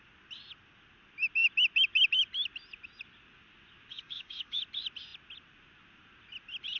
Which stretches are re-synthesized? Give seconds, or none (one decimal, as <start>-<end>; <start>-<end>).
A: 3.9-4.6